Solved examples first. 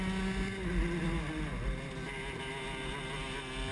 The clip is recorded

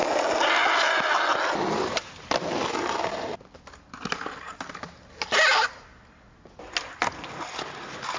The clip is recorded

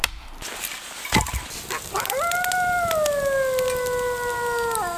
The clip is recorded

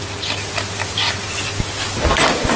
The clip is recorded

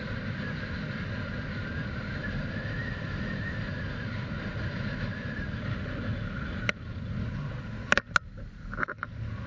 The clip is recorded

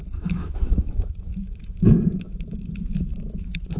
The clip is remade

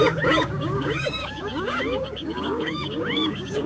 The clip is remade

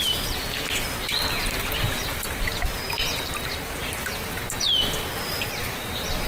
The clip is recorded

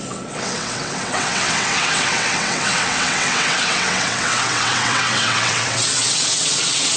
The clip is remade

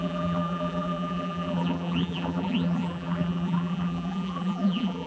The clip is remade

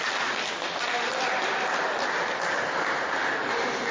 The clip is recorded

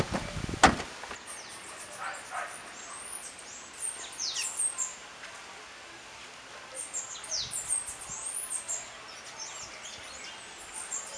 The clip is recorded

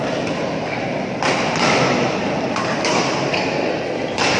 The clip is recorded